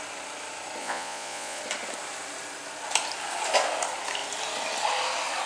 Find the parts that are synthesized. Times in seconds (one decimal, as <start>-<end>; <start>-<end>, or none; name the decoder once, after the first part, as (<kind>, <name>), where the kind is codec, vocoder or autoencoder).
0.8-1.6 (vocoder, Vocos)